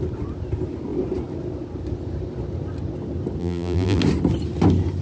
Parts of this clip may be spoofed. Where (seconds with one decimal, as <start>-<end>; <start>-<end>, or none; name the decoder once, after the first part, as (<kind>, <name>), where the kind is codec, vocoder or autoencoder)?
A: 3.4-4.0 (vocoder, BigVGAN v2)